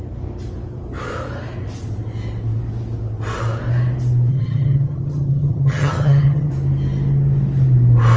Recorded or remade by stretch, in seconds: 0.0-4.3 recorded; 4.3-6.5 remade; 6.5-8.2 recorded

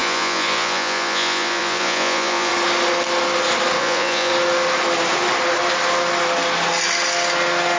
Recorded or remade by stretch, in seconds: 0.0-2.5 remade; 2.5-3.8 recorded; 3.8-4.3 remade; 4.3-7.8 recorded